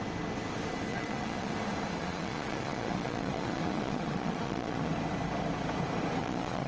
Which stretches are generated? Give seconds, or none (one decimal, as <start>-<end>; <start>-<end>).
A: 0.9-1.5; 2.0-4.9; 6.2-6.7